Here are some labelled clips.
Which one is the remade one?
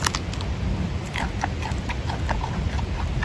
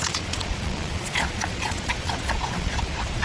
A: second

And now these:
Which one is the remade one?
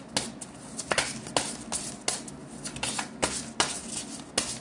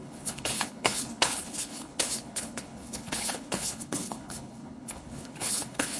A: second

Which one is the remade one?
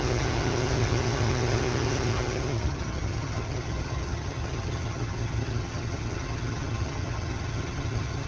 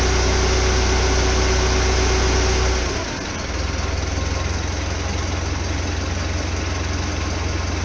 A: first